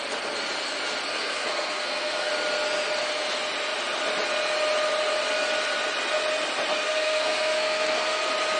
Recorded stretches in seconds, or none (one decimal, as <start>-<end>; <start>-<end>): 0.0-1.1; 2.3-6.7; 8.2-8.6